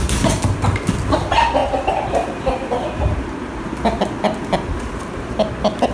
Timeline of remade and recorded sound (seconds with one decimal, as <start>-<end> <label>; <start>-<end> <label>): 0.0-5.9 recorded